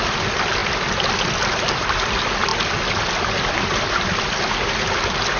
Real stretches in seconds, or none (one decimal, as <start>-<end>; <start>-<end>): 0.0-5.4